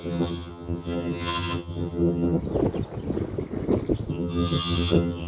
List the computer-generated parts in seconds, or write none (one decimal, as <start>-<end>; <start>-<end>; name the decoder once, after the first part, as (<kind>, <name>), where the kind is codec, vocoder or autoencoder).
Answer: 0.0-2.4 (vocoder, HiFi-GAN); 4.1-5.3